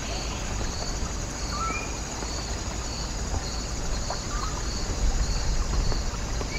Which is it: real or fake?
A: real